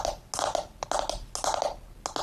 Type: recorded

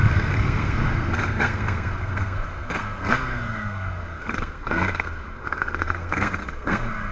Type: remade